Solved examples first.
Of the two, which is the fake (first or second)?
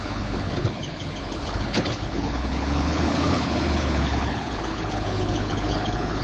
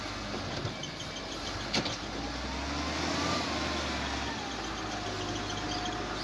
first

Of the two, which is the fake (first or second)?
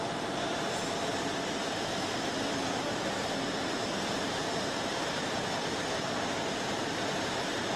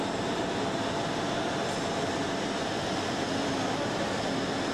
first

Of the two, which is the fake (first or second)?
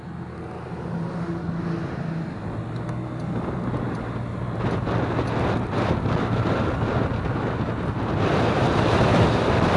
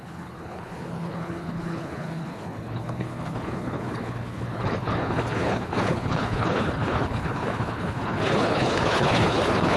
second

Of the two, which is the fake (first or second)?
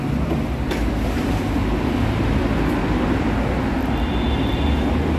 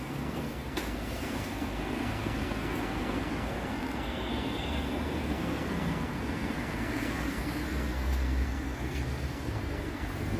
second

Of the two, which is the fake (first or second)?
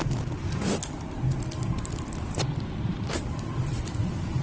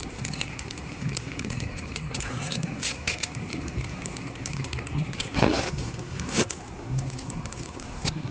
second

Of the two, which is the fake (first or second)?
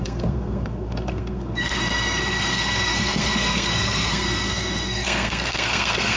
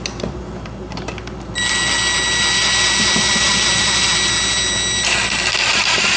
first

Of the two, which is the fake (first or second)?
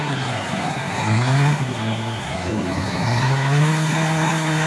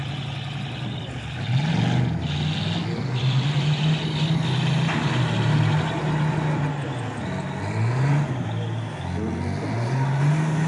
first